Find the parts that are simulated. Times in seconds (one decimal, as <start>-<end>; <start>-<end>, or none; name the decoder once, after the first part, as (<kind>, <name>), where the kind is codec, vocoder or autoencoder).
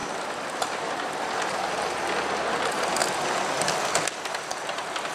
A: 0.0-5.1 (vocoder, BigVGAN v2)